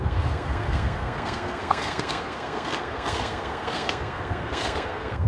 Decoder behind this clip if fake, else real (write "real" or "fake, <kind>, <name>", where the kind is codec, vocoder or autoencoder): fake, codec, SNAC